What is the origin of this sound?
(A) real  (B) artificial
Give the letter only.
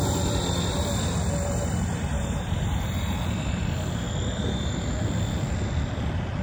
A